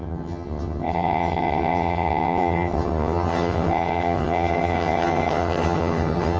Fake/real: fake